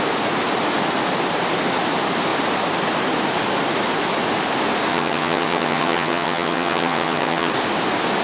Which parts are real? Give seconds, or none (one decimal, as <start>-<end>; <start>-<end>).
0.0-4.9; 7.5-8.2

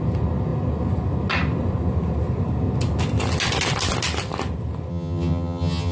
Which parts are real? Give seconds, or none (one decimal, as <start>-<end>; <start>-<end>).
0.0-4.9

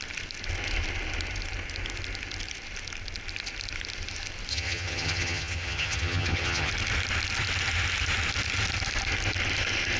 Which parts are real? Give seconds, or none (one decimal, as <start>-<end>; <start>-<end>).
0.0-4.5; 6.7-10.0

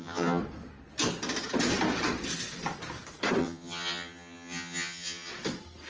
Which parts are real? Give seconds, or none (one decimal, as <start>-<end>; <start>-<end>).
0.4-3.4; 5.3-5.9